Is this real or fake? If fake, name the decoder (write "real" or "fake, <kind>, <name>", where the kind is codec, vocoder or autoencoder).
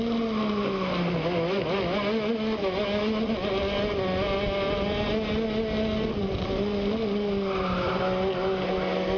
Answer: real